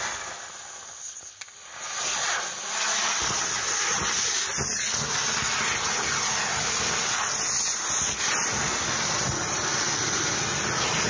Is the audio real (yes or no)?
yes